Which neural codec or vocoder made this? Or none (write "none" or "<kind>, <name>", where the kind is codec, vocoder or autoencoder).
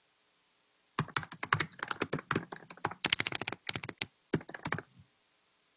none